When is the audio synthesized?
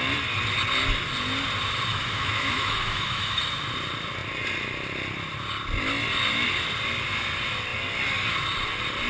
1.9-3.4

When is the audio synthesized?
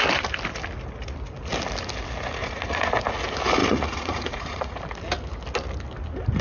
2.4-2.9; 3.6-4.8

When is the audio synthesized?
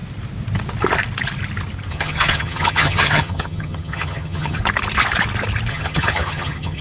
1.9-4.6; 5.7-6.8